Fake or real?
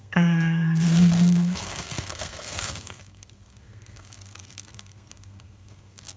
fake